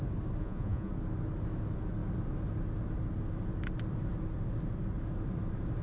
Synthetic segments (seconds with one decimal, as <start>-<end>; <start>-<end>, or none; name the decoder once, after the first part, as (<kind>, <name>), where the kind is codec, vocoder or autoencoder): 0.4-0.9 (vocoder, Vocos)